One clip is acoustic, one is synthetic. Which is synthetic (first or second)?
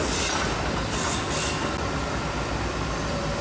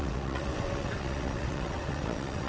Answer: second